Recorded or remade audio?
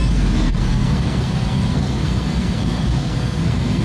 remade